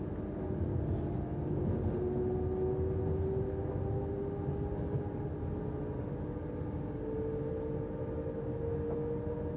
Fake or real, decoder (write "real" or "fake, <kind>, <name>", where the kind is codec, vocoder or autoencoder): real